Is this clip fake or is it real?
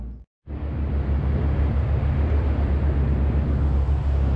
real